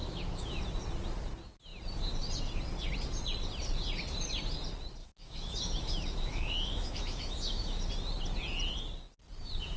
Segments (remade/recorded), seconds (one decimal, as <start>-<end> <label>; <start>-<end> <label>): 0.0-0.6 remade; 0.6-5.0 recorded; 5.0-7.8 remade; 7.8-9.8 recorded